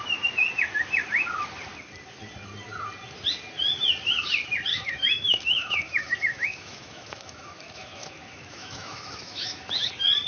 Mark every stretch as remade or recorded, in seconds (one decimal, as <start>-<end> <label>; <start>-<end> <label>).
0.0-4.7 recorded; 4.7-9.9 remade; 9.9-10.3 recorded